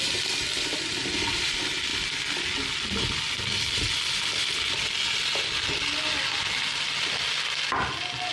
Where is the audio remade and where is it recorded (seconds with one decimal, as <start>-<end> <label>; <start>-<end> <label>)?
0.0-8.3 recorded